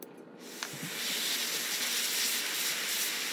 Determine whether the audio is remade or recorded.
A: recorded